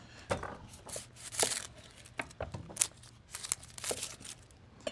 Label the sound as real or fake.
real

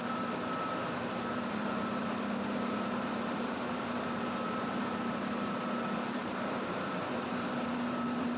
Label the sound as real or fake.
fake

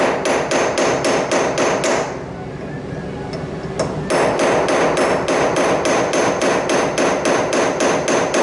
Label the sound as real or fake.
real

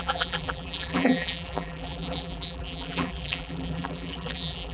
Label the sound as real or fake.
fake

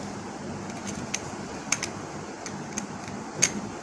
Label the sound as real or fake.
real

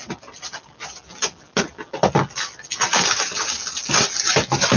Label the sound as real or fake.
real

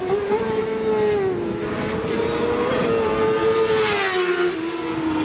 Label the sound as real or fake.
real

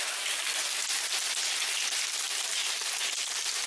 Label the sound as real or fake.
real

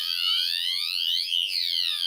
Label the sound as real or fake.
fake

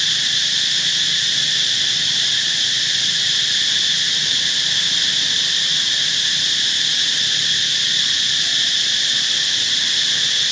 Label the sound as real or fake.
fake